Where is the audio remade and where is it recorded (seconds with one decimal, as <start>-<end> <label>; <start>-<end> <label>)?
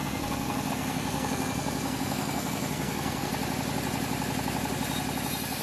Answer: 0.0-3.3 remade; 3.3-5.6 recorded